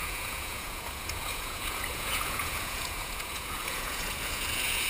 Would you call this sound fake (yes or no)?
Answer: yes